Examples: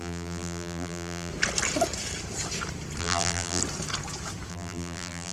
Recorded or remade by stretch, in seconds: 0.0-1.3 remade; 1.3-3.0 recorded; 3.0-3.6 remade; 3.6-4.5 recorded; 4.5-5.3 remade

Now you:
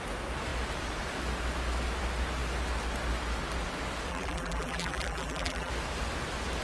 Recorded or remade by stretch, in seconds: 0.0-4.1 recorded; 4.1-5.7 remade; 5.7-6.6 recorded

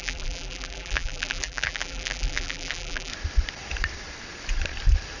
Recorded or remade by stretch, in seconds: 0.0-3.1 remade; 3.1-5.2 recorded

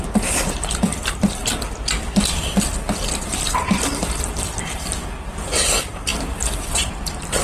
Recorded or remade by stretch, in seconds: 0.0-7.4 remade

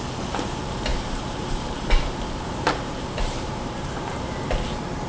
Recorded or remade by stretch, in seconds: 0.0-0.9 recorded; 0.9-4.0 remade; 4.0-5.1 recorded

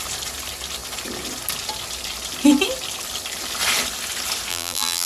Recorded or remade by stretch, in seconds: 0.0-4.5 recorded; 4.5-5.1 remade